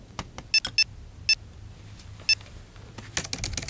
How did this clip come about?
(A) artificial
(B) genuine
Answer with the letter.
B